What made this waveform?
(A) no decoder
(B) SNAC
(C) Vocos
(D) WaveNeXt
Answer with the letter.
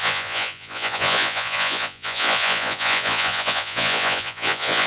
C